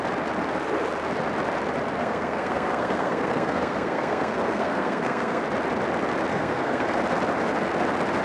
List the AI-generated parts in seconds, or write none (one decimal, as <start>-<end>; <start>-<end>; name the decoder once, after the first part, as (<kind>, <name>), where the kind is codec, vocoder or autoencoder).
2.0-5.4 (codec, SNAC); 6.3-7.0

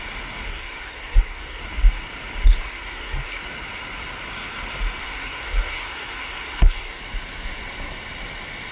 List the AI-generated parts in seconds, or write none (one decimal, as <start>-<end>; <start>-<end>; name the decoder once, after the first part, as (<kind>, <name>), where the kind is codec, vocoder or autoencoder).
0.5-1.6 (codec, SNAC); 2.6-3.4; 5.0-7.0